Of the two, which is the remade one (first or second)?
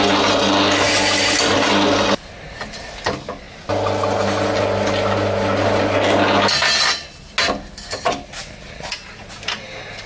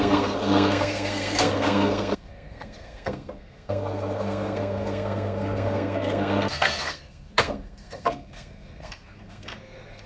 second